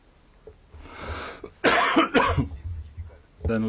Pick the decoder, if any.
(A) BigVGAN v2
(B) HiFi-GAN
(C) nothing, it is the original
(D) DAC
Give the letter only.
C